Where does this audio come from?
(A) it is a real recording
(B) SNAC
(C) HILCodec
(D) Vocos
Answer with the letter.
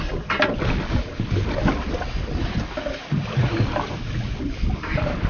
A